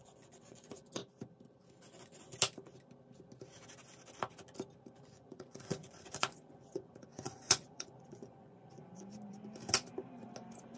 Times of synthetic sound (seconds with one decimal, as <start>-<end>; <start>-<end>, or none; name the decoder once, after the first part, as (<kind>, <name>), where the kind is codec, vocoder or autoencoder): 0.0-1.0 (vocoder, Vocos); 1.8-2.3; 4.9-9.1